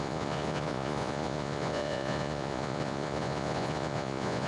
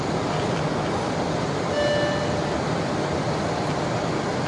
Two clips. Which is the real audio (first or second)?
second